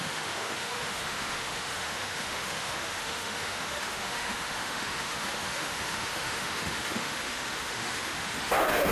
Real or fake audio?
fake